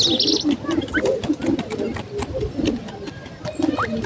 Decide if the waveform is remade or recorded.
recorded